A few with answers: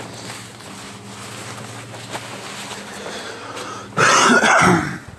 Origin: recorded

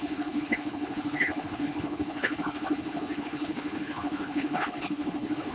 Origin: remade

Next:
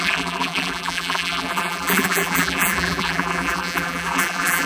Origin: remade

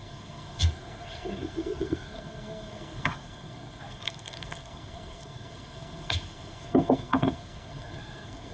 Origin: remade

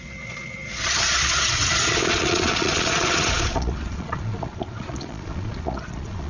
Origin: remade